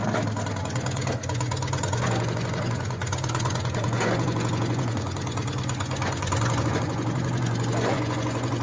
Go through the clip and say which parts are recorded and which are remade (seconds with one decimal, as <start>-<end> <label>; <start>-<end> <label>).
0.0-0.6 recorded; 0.6-8.6 remade